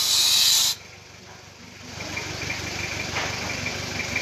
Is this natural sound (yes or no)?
yes